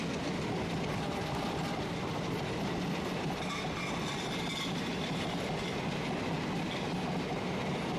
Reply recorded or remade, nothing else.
recorded